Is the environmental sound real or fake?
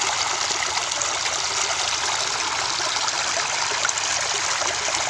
real